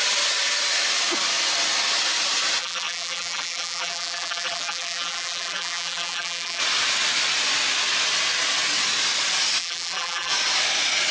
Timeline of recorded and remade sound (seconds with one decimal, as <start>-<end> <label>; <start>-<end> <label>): 0.0-2.6 recorded; 2.6-6.6 remade; 6.6-9.6 recorded; 9.6-10.3 remade; 10.3-11.1 recorded